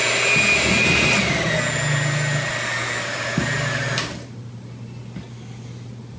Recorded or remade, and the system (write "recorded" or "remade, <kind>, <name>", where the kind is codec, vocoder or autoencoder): recorded